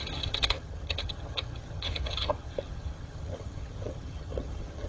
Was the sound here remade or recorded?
remade